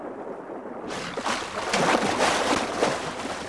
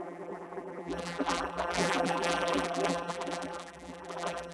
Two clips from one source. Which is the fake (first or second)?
second